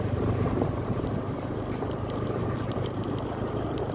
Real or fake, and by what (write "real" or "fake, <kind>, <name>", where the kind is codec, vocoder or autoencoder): fake, vocoder, BigVGAN v2